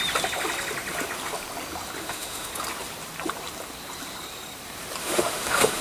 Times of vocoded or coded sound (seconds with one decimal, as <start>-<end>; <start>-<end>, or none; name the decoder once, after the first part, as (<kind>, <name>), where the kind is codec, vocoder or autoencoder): 2.0-2.5 (autoencoder, DAC-VAE); 5.0-5.8